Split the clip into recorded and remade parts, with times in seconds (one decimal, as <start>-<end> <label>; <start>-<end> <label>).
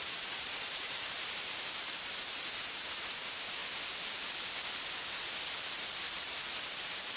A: 0.0-3.6 remade; 3.6-5.6 recorded; 5.6-7.2 remade